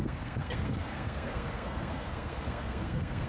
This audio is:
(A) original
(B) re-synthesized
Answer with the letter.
B